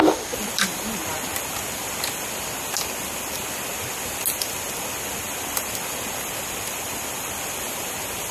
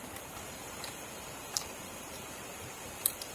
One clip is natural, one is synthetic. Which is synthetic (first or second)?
second